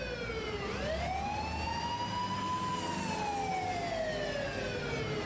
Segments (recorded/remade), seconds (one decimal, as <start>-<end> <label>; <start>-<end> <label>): 0.0-5.3 recorded